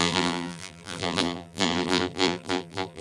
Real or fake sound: fake